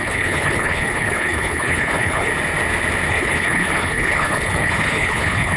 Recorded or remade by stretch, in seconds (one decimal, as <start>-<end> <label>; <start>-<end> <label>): 0.0-2.3 remade; 2.3-3.1 recorded; 3.1-5.6 remade